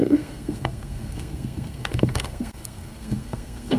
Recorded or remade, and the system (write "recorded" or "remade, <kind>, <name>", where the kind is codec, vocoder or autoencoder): remade, codec, SNAC